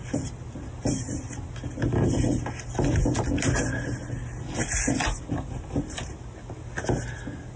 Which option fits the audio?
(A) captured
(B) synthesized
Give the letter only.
A